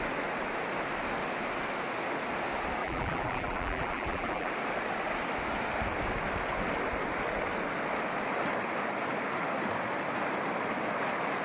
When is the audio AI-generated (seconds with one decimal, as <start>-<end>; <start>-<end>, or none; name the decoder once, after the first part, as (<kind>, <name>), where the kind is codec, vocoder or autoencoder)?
2.8-4.5 (vocoder, BigVGAN v2)